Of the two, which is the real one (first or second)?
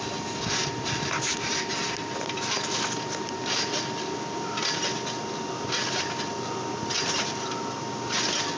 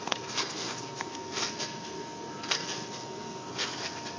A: first